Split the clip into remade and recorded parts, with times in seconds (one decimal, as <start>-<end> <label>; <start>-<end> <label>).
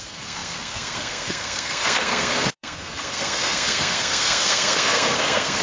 0.0-5.6 remade